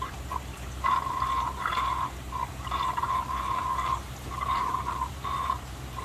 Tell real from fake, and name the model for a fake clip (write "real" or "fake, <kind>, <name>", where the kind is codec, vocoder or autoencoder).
fake, vocoder, BigVGAN v2